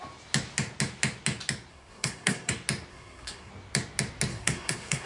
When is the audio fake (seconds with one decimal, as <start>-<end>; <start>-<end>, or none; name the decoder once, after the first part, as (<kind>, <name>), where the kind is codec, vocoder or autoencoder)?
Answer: 1.7-2.5 (codec, SNAC); 2.9-3.5; 4.3-5.1